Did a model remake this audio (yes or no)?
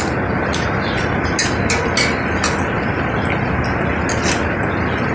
no